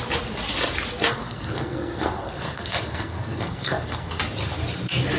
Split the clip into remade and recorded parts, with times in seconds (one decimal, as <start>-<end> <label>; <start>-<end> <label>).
0.0-1.1 recorded; 1.1-4.2 remade; 4.2-5.2 recorded